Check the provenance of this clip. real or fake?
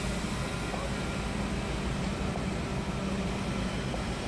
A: real